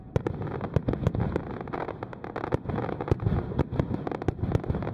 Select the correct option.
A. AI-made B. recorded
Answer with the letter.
B